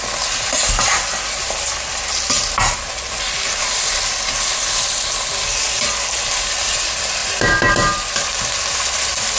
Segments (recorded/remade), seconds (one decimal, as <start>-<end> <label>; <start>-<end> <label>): 0.0-9.4 recorded